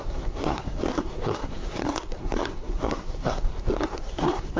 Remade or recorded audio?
remade